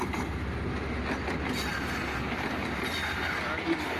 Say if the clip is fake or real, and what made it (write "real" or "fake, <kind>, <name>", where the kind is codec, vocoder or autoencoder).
real